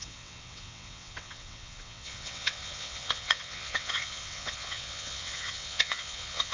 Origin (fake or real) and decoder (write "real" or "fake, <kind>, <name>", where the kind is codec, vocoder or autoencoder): fake, vocoder, WaveNeXt